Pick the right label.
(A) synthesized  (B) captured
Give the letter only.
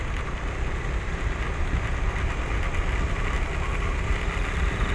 B